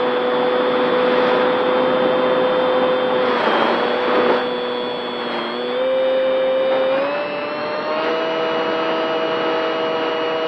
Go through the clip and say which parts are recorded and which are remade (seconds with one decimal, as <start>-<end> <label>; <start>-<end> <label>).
0.0-7.6 recorded; 7.6-8.1 remade; 8.1-10.5 recorded